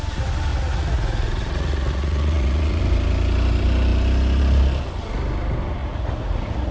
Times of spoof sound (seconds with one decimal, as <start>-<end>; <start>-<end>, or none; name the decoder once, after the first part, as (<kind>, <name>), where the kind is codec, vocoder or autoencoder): 0.5-2.8 (vocoder, Vocos); 5.8-6.7